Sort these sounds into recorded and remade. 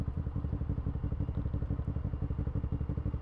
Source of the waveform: recorded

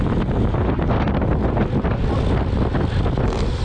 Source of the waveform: recorded